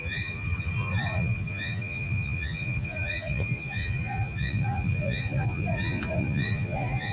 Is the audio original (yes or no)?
no